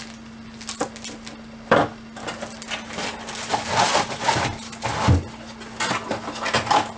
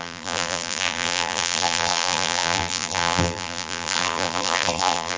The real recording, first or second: first